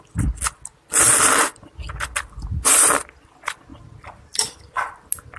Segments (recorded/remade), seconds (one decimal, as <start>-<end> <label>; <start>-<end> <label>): 0.0-1.5 recorded; 1.5-2.1 remade; 2.1-3.7 recorded; 3.7-4.9 remade; 4.9-5.4 recorded